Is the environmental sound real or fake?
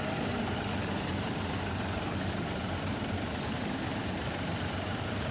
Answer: fake